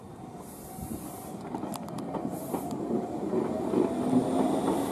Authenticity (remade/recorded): recorded